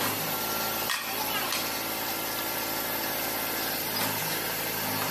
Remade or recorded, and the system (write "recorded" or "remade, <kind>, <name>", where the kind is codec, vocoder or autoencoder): recorded